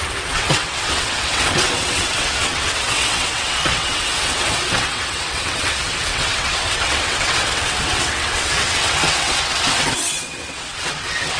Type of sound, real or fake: fake